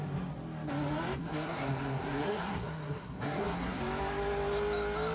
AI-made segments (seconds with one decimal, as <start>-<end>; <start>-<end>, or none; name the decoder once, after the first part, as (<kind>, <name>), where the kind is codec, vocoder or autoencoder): 1.2-3.8 (codec, SNAC)